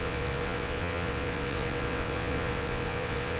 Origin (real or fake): fake